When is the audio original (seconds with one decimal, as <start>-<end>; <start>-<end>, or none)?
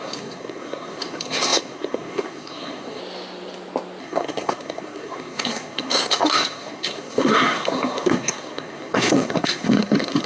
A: 3.0-4.0